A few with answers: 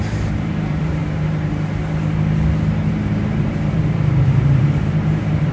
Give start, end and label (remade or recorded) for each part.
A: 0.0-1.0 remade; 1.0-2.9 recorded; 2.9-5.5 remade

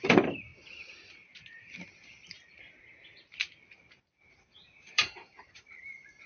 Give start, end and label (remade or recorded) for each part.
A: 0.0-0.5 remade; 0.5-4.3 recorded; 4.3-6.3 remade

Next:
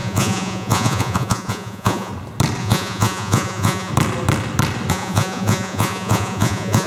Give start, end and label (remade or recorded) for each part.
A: 0.0-2.1 remade; 2.1-2.6 recorded; 2.6-3.9 remade; 3.9-4.9 recorded; 4.9-6.9 remade